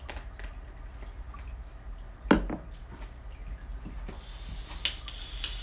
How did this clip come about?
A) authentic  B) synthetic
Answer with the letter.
A